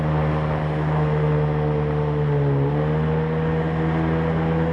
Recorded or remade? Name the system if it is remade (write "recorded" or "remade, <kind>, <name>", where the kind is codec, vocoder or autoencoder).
recorded